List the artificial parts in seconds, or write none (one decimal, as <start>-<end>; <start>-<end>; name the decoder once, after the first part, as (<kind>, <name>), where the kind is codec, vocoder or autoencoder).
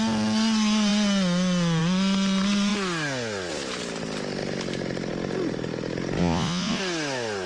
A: 6.2-6.8 (vocoder, Vocos)